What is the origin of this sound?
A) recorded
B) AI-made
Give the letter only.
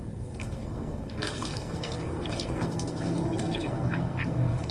B